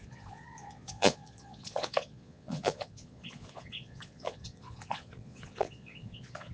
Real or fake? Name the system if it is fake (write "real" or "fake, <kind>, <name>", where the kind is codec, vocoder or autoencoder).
fake, vocoder, Vocos